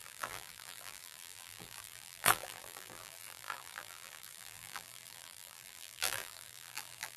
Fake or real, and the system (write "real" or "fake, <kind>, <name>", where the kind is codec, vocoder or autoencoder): fake, vocoder, BigVGAN v2